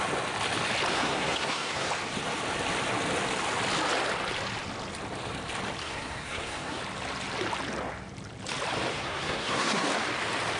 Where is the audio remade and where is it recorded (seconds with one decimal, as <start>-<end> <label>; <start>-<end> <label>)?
0.0-0.9 recorded; 0.9-1.9 remade; 1.9-5.8 recorded; 5.8-6.8 remade; 6.8-8.9 recorded; 8.9-9.9 remade; 9.9-10.6 recorded